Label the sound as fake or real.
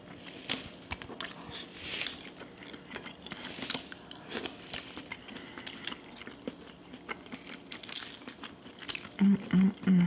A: real